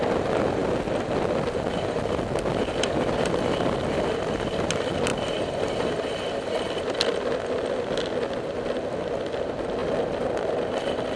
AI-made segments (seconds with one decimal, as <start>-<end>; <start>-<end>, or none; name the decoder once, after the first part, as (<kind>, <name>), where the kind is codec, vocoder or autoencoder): none